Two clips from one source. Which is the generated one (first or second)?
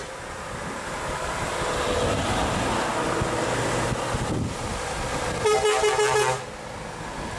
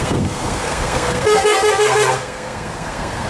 second